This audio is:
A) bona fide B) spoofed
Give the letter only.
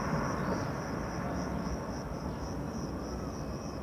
A